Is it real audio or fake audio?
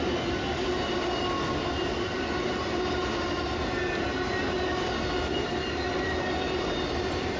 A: real